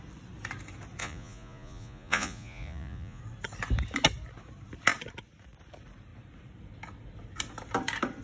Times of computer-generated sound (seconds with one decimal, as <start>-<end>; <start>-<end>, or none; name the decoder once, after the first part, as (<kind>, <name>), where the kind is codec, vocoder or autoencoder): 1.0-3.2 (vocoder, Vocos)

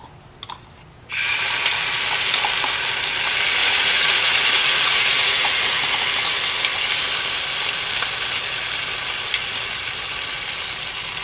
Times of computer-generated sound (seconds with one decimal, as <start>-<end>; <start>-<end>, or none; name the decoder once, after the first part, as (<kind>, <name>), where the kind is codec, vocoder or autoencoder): 3.6-5.8 (vocoder, Vocos)

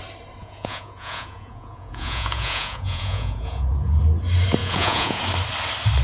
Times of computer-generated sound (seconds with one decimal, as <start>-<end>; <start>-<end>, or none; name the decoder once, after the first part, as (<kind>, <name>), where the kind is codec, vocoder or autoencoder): 0.4-4.0 (vocoder, Vocos); 4.6-5.2

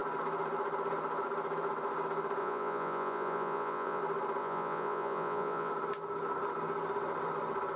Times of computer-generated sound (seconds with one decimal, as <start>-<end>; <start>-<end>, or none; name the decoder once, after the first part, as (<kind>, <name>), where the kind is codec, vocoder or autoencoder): 2.4-4.0 (vocoder, Vocos); 4.4-5.7

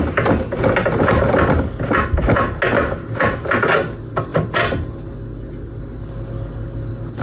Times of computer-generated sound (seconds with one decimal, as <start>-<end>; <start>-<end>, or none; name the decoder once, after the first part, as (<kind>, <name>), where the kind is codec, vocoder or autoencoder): none

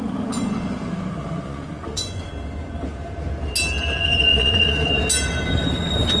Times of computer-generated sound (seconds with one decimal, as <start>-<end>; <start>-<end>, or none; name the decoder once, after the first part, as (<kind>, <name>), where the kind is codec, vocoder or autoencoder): 1.2-2.3 (vocoder, Vocos); 4.3-5.0

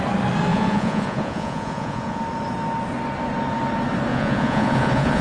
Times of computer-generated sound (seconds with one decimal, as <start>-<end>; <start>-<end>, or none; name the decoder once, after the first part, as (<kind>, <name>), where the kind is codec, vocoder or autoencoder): 0.5-2.2 (vocoder, Vocos); 4.1-5.2

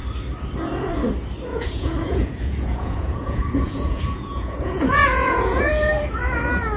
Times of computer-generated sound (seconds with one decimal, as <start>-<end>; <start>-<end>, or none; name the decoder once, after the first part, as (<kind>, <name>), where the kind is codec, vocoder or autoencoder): 1.5-5.6 (vocoder, Vocos)